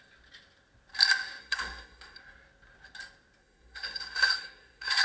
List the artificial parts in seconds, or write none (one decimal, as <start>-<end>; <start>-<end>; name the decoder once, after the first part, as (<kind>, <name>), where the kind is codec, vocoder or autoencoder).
1.4-2.2 (codec, SNAC); 3.4-5.0